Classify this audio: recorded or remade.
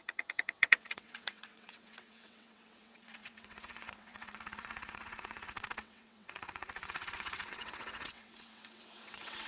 remade